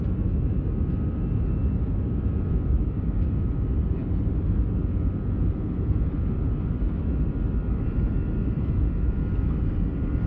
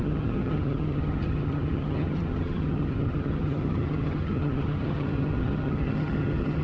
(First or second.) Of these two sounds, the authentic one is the first